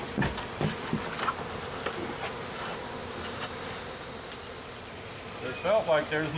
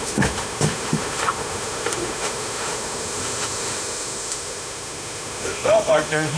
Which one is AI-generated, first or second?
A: second